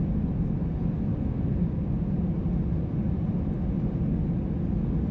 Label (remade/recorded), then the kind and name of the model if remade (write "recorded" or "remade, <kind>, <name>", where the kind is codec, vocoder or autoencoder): recorded